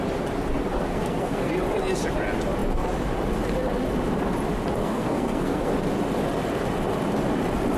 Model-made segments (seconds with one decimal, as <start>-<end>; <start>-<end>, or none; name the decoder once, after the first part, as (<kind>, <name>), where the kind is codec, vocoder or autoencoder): 0.7-1.5 (codec, SNAC); 4.8-5.7